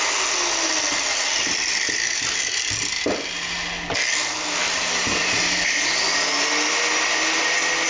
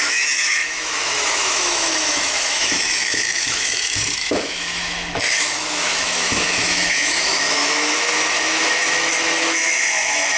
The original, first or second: first